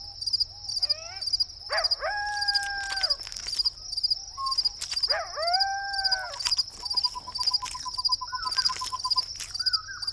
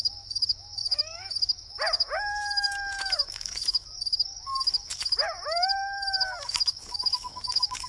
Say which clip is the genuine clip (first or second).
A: first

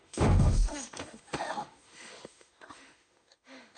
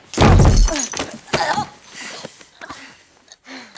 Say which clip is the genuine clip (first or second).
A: second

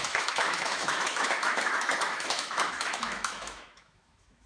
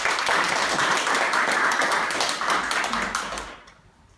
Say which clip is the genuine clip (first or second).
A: second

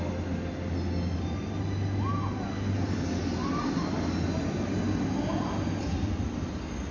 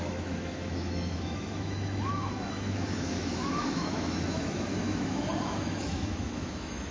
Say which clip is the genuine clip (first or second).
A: first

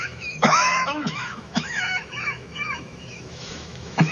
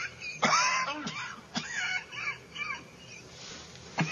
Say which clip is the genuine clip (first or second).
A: second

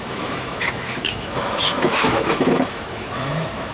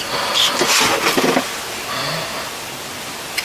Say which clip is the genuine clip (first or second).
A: second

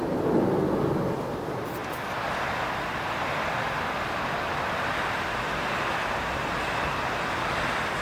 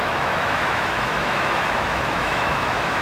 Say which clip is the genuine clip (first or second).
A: first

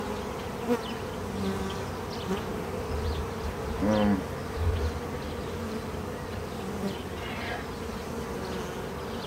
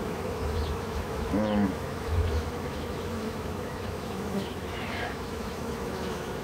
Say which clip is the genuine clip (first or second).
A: first